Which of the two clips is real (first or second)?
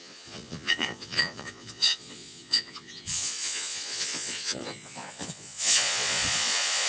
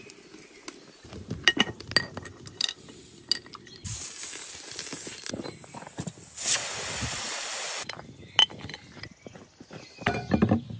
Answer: second